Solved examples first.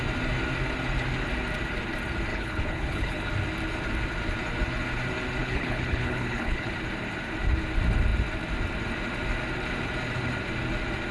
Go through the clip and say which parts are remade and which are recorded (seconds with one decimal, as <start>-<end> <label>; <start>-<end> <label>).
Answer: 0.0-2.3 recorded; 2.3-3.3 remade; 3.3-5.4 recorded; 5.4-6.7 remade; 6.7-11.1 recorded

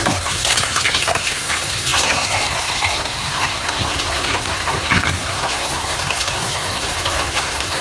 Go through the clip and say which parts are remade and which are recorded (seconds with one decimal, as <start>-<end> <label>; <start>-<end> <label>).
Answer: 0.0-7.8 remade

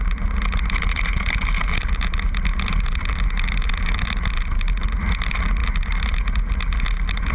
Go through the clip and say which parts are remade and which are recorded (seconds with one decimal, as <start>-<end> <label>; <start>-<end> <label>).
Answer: 0.0-7.3 recorded

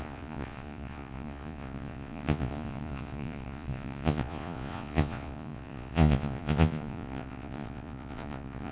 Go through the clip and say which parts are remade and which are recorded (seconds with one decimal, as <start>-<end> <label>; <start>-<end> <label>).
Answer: 0.0-8.7 remade